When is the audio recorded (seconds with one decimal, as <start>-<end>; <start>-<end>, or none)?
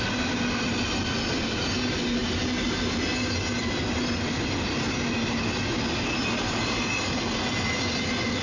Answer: 0.0-8.4